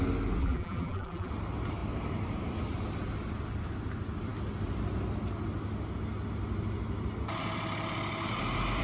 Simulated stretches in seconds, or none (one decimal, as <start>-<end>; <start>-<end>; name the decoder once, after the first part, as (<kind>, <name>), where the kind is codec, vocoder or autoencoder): 0.4-1.3 (vocoder, BigVGAN v2)